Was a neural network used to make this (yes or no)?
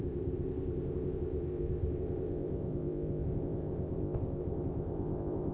yes